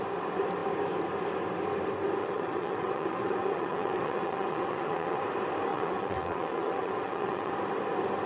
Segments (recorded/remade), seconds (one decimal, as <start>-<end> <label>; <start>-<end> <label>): 0.0-2.2 recorded; 2.2-5.2 remade; 5.2-5.7 recorded; 5.7-7.5 remade; 7.5-8.3 recorded